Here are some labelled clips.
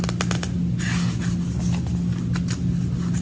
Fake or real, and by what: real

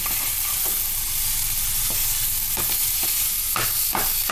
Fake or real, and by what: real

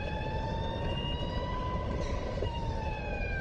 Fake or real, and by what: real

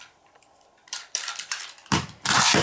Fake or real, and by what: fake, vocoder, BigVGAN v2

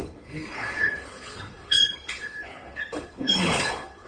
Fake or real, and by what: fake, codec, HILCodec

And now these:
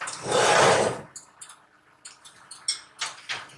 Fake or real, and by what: real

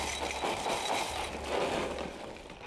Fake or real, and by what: real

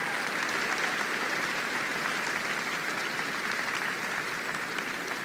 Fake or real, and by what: real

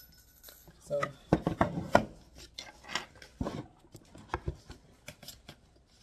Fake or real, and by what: real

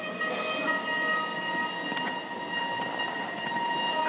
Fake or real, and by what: real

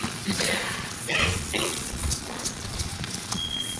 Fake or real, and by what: fake, vocoder, Vocos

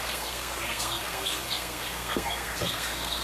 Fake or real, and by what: fake, codec, SNAC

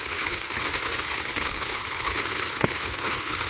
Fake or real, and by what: fake, codec, HILCodec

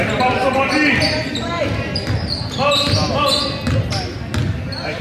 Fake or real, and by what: real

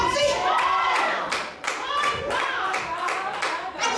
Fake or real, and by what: fake, vocoder, BigVGAN v2